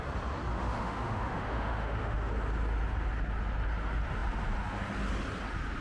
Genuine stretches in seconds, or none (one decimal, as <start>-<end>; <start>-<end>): 0.0-0.5; 2.3-5.8